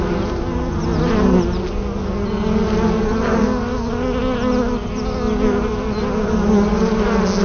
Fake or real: real